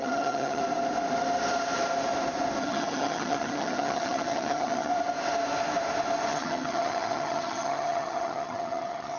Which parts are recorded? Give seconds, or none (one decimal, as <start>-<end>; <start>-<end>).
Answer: 0.6-2.6; 4.9-6.3